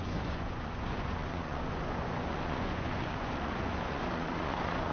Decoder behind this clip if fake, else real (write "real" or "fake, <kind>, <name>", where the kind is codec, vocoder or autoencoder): fake, vocoder, Vocos